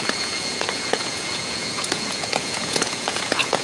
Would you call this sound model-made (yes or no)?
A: yes